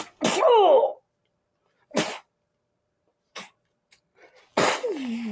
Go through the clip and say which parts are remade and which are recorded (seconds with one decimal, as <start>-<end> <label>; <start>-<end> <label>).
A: 0.0-1.2 recorded; 1.2-4.4 remade; 4.4-5.3 recorded